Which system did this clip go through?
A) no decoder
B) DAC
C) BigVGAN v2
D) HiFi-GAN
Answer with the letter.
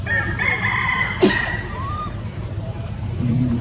C